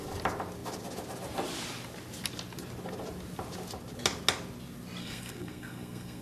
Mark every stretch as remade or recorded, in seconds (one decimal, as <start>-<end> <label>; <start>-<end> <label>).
0.0-5.0 recorded; 5.0-6.2 remade